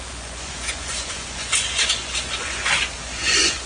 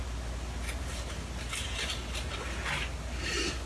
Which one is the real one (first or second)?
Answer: second